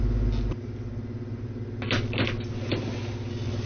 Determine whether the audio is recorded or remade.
recorded